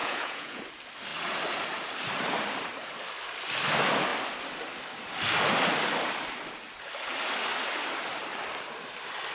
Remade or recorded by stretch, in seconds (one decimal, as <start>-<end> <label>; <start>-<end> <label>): 0.0-0.6 remade; 0.6-9.3 recorded